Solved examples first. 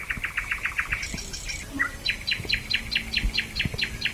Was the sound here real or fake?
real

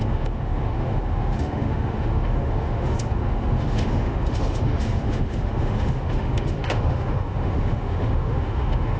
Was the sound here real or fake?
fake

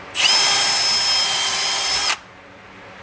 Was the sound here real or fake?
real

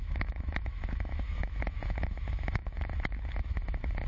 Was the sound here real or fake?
fake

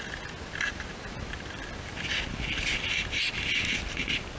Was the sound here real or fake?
real